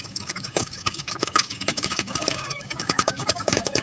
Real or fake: fake